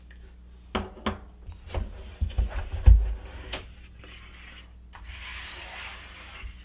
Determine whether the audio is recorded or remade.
recorded